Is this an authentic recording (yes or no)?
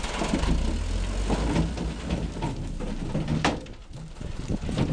yes